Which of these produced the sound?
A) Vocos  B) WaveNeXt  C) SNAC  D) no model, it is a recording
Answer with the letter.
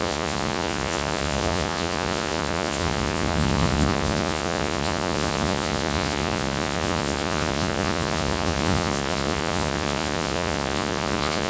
A